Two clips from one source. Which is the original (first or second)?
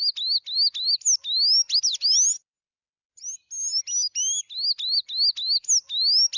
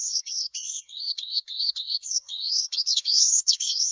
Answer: first